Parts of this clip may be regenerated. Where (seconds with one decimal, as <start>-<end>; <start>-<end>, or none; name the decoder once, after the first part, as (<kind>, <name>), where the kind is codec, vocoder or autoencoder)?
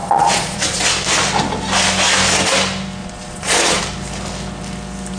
0.0-0.8 (vocoder, Vocos); 3.0-3.8